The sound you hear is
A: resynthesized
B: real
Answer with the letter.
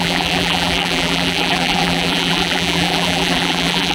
A